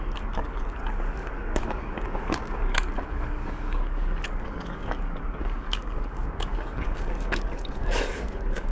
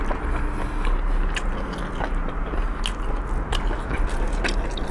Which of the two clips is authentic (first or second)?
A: second